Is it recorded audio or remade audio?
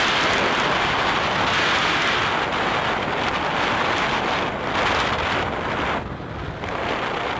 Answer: recorded